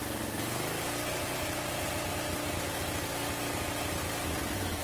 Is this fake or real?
real